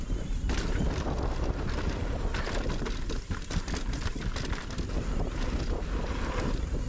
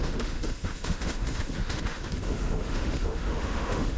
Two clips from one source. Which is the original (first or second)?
first